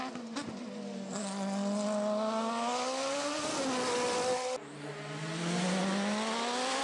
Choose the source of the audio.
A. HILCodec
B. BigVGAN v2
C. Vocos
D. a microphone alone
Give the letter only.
D